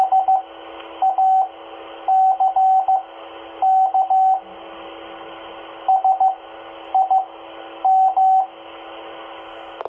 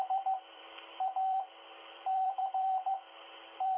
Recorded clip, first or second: first